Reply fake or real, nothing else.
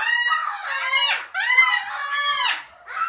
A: real